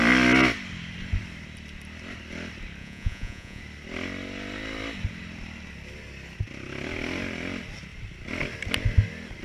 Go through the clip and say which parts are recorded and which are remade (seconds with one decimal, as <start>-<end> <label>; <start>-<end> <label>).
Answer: 0.0-2.8 recorded; 2.8-3.6 remade; 3.6-9.4 recorded